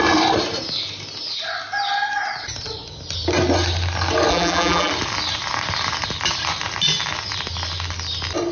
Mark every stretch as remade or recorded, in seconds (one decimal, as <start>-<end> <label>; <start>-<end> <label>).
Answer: 0.0-4.3 recorded; 4.3-4.9 remade; 4.9-8.5 recorded